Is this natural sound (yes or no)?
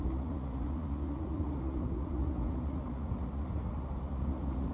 no